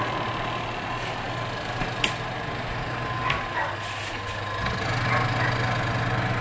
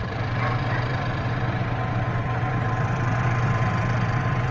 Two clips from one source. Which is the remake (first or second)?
second